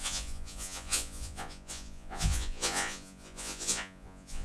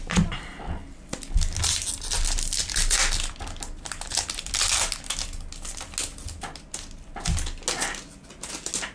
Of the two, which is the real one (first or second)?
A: second